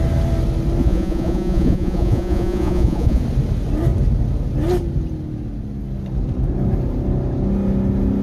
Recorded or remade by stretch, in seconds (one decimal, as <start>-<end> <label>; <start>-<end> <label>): 0.0-0.8 recorded; 0.8-3.2 remade; 3.2-8.2 recorded